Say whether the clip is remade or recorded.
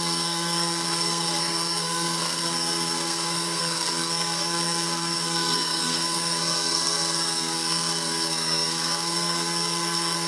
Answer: remade